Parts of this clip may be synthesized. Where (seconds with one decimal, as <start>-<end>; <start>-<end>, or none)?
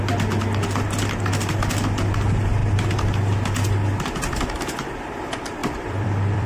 5.6-6.5